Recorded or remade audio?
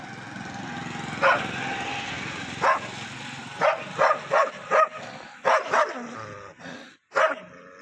recorded